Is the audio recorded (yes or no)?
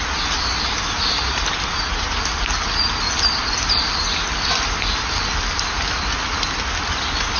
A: yes